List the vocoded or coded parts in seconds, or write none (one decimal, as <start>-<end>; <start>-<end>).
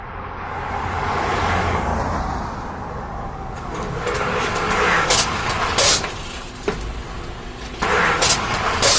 0.0-1.9; 2.9-5.4; 8.4-9.0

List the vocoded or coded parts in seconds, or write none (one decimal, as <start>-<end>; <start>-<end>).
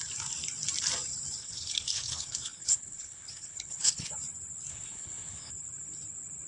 1.4-4.1; 4.7-5.5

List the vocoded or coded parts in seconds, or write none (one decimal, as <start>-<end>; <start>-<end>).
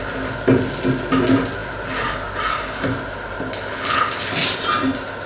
3.5-4.2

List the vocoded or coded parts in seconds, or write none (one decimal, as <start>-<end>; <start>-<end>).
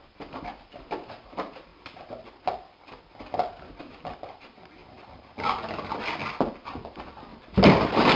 0.0-1.7; 3.8-4.8; 6.5-8.2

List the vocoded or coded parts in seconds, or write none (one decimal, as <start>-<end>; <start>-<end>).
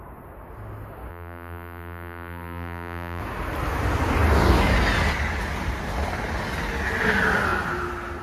1.1-3.2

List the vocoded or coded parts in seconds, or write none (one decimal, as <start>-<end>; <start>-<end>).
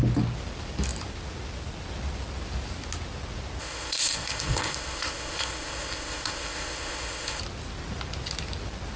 3.6-7.4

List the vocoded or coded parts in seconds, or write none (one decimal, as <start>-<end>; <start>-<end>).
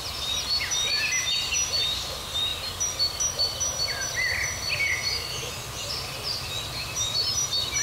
none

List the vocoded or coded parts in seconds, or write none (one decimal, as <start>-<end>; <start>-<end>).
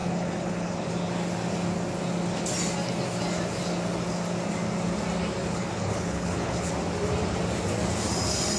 0.0-0.9; 5.4-6.7